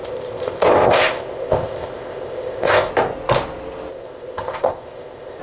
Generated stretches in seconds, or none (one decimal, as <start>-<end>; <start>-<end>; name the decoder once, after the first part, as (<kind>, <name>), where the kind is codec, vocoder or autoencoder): 0.0-2.9 (codec, ZipCodec); 3.9-5.4